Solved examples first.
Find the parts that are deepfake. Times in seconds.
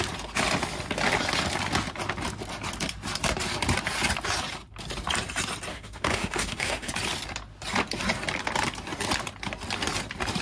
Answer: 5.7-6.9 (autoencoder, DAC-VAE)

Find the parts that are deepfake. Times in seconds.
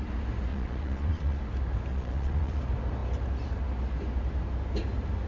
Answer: 0.5-1.4 (vocoder, Vocos); 1.9-2.6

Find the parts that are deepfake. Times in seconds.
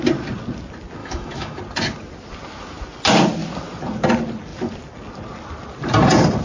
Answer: 1.0-1.6 (autoencoder, DAC-VAE)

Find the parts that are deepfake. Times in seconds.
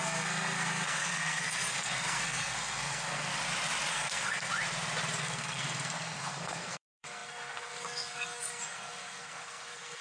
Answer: 0.0-3.3 (codec, SNAC); 3.9-4.5; 5.2-10.0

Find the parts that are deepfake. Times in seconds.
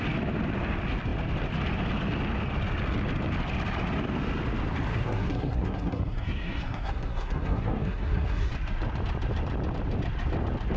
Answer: 4.9-8.5 (codec, SNAC)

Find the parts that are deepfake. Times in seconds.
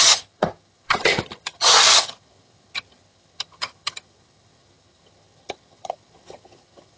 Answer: 0.0-7.0 (vocoder, HiFi-GAN)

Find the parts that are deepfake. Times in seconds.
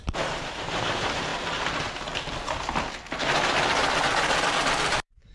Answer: 0.0-1.3 (vocoder, BigVGAN v2); 4.5-5.3